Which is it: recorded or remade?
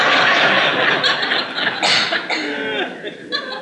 recorded